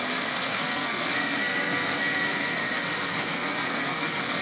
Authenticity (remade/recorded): remade